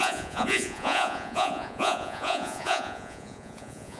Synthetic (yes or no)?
yes